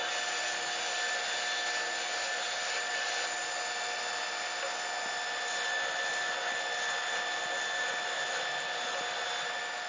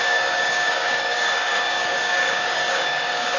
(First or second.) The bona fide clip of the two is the first